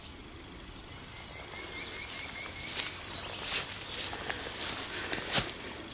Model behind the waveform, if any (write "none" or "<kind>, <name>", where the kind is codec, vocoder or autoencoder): none